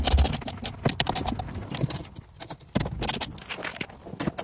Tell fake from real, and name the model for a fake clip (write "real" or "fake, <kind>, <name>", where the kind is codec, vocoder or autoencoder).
real